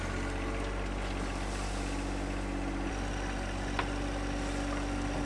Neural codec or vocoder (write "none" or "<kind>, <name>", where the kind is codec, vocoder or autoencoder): none